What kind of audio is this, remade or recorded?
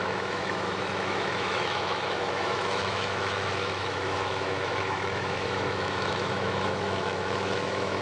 remade